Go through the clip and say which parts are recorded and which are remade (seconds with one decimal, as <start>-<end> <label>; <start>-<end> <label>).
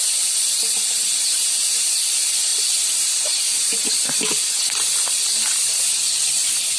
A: 0.0-2.5 recorded; 2.5-3.9 remade; 3.9-6.8 recorded